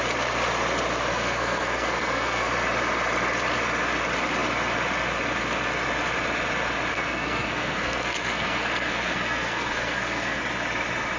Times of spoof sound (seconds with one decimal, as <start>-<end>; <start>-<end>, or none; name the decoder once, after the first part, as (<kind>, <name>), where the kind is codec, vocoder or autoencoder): 1.1-2.5 (codec, SNAC); 6.9-10.4